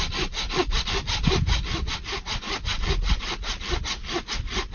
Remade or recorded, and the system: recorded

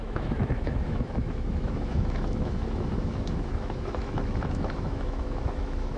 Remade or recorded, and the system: remade, autoencoder, DAC-VAE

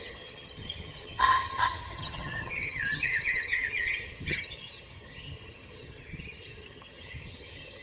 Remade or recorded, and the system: remade, vocoder, HiFi-GAN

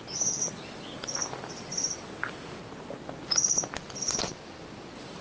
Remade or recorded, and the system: recorded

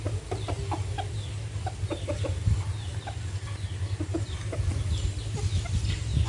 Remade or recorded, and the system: recorded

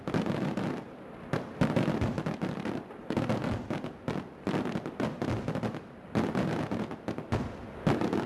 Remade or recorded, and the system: recorded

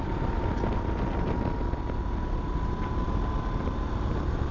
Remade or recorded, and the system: recorded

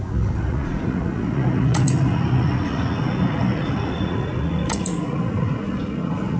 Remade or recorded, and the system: remade, vocoder, Vocos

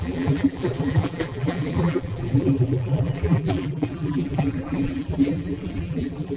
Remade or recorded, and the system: remade, vocoder, BigVGAN v2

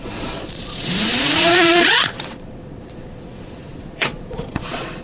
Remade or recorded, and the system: remade, vocoder, Vocos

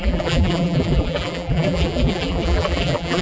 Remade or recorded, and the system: remade, vocoder, BigVGAN v2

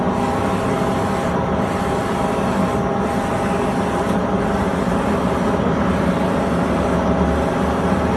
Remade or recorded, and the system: recorded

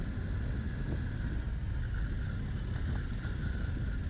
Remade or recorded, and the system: recorded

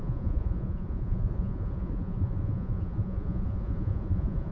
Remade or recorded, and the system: remade, vocoder, Vocos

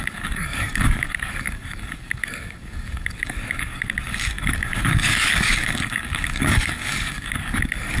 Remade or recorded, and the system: remade, codec, DAC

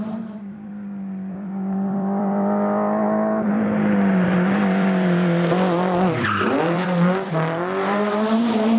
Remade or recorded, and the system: remade, vocoder, BigVGAN v2